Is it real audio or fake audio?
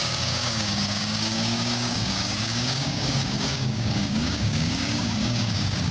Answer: fake